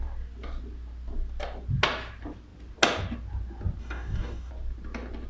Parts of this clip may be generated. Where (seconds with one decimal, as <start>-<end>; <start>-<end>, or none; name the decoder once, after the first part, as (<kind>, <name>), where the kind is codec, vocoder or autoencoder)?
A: 3.8-4.5 (codec, DAC)